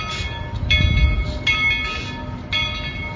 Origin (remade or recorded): recorded